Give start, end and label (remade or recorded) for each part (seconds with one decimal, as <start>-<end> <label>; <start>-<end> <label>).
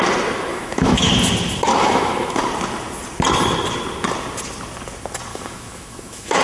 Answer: 0.0-0.5 recorded; 0.5-1.1 remade; 1.1-1.7 recorded; 1.7-2.4 remade; 2.4-5.3 recorded; 5.3-6.4 remade